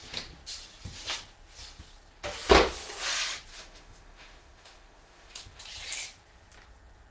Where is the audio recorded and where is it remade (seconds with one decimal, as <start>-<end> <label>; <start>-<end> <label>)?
0.0-3.5 recorded; 3.5-5.6 remade; 5.6-7.1 recorded